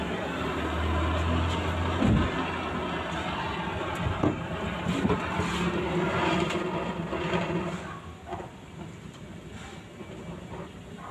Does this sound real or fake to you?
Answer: real